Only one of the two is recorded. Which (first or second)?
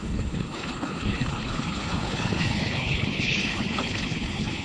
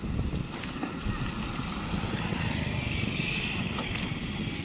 second